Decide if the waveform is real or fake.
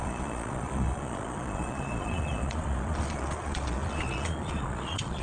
fake